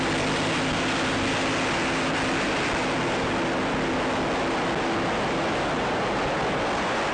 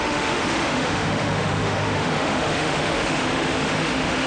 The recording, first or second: first